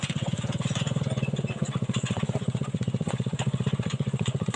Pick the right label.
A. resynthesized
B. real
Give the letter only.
A